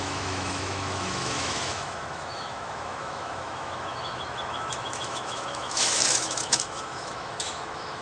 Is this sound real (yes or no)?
no